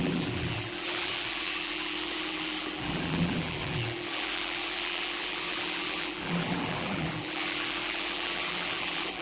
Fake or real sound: fake